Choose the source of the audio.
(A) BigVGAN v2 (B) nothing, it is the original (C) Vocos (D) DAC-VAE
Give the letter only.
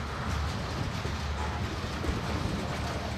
B